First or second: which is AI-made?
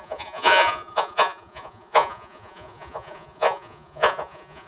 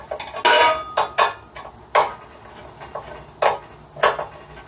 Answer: first